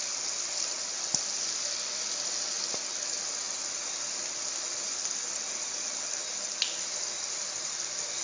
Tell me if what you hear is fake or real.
real